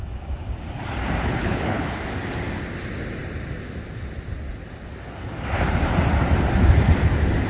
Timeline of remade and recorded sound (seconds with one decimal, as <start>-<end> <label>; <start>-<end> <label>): 0.0-1.4 recorded; 1.4-2.0 remade; 2.0-7.5 recorded